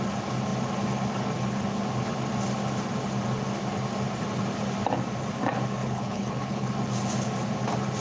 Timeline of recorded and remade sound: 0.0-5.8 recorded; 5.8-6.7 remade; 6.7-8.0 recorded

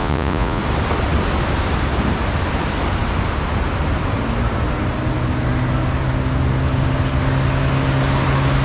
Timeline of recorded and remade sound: 0.0-0.6 remade; 0.6-8.6 recorded

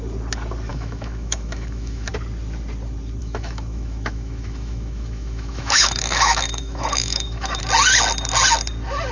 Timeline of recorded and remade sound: 0.0-0.7 recorded; 0.7-2.1 remade; 2.1-3.2 recorded; 3.2-7.6 remade; 7.6-9.1 recorded